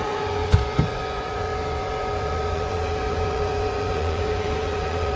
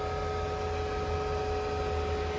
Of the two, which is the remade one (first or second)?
first